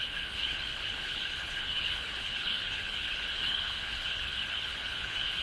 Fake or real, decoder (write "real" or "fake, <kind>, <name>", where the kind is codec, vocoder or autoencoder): fake, codec, HILCodec